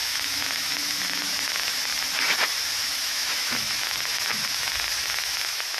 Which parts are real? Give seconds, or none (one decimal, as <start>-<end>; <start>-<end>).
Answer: 1.9-2.5